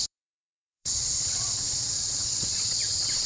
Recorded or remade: remade